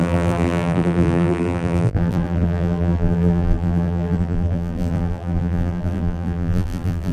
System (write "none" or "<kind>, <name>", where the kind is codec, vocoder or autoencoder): vocoder, BigVGAN v2